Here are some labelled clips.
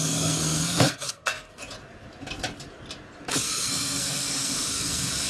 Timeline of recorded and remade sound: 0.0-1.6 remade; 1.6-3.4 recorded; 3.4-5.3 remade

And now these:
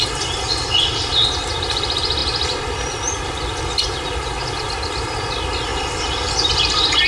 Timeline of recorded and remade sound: 0.0-7.1 recorded

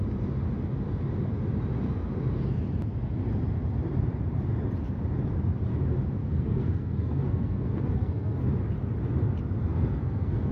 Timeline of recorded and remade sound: 0.0-6.2 recorded; 6.2-8.4 remade; 8.4-9.7 recorded; 9.7-10.5 remade

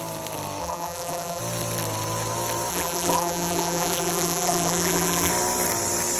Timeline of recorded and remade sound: 0.0-0.6 recorded; 0.6-1.4 remade; 1.4-2.7 recorded; 2.7-5.3 remade; 5.3-6.2 recorded

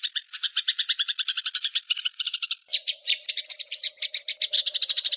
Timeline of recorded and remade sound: 0.0-5.2 recorded

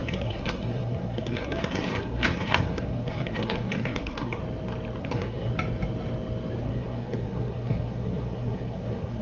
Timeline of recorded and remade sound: 0.0-4.4 remade; 4.4-5.0 recorded; 5.0-5.5 remade; 5.5-6.6 recorded; 6.6-9.2 remade